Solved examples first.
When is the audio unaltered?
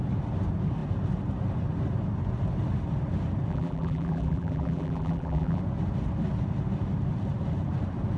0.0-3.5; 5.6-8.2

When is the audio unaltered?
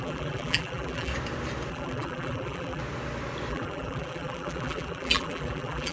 1.1-1.7; 2.8-3.5